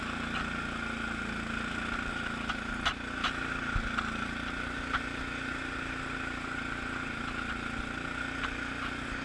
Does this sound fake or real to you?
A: real